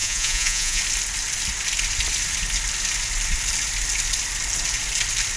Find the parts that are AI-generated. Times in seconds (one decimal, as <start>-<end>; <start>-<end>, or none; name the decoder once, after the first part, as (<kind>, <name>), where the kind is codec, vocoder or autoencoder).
0.0-0.8 (vocoder, Vocos)